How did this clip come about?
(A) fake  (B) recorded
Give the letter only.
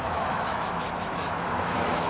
A